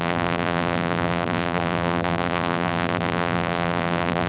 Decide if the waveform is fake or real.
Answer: fake